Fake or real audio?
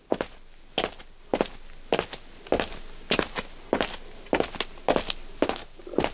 real